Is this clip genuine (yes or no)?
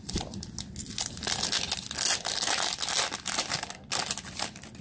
yes